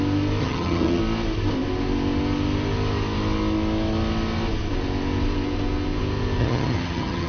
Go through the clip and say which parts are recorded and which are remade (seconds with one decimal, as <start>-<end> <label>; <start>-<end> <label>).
0.0-0.4 recorded; 0.4-1.0 remade; 1.0-6.4 recorded; 6.4-7.3 remade